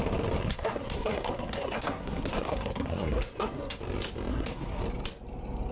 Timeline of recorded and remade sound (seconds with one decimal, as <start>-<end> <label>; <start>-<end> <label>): 0.0-0.4 recorded; 0.4-3.8 remade; 3.8-4.3 recorded; 4.3-4.8 remade; 4.8-5.7 recorded